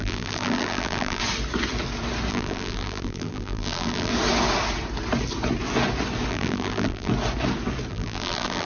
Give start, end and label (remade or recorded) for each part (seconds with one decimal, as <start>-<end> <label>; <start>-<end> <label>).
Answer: 0.0-1.2 remade; 1.2-2.3 recorded; 2.3-4.1 remade; 4.1-6.3 recorded; 6.3-7.1 remade; 7.1-7.9 recorded; 7.9-8.7 remade